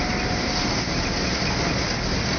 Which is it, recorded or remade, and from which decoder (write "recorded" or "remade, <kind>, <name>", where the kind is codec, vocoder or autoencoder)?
recorded